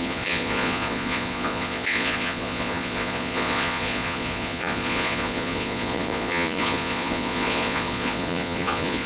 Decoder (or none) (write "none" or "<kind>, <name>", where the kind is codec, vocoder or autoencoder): vocoder, Vocos